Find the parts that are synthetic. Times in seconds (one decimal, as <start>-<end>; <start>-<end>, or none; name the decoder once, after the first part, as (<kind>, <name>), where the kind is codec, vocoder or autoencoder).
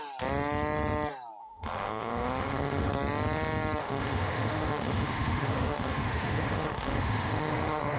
1.4-2.9 (autoencoder, DAC-VAE); 3.8-8.0